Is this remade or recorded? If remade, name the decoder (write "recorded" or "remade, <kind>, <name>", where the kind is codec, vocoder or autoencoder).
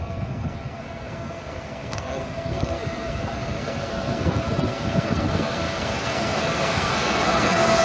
remade, codec, SNAC